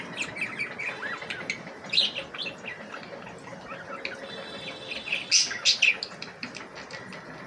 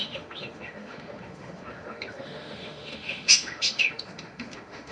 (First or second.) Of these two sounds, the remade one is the second